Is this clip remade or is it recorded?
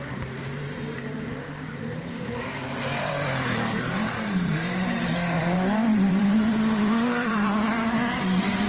remade